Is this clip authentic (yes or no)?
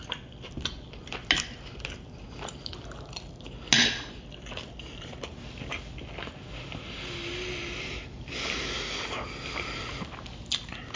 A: yes